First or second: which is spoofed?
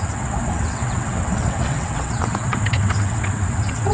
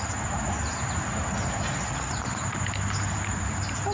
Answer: first